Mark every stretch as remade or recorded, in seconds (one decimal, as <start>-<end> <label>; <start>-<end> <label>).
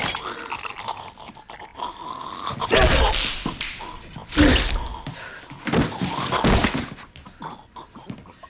0.0-8.5 recorded